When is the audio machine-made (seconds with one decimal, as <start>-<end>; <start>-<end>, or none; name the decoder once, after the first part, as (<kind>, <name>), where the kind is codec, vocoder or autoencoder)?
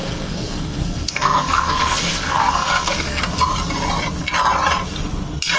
0.0-3.2 (codec, SNAC)